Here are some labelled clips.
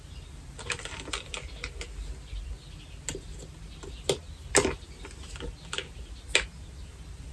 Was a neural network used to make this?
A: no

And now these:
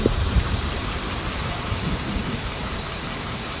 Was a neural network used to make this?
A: yes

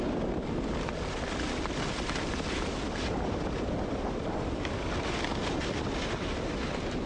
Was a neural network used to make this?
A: no